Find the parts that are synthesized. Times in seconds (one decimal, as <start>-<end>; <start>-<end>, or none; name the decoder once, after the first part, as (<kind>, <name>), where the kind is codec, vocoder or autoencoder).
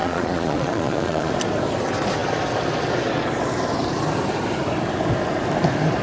0.0-1.3 (vocoder, Vocos)